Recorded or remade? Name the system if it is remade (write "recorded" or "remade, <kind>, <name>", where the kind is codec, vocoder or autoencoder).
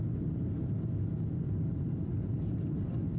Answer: recorded